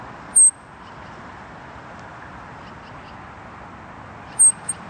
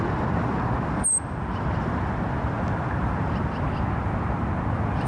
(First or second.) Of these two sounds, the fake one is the second